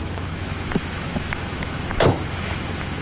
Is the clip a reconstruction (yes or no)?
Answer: yes